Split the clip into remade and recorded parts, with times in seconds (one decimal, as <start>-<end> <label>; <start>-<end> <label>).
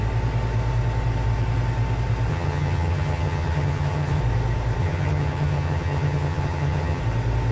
0.0-2.3 recorded; 2.3-4.2 remade; 4.2-4.8 recorded; 4.8-7.0 remade; 7.0-7.5 recorded